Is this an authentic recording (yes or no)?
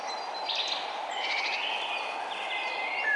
yes